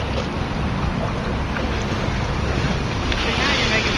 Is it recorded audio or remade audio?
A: recorded